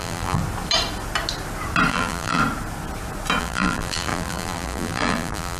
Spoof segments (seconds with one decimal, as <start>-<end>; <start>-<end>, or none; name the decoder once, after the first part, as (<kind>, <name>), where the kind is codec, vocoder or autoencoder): 0.0-0.4 (vocoder, BigVGAN v2); 1.9-2.4; 3.4-5.6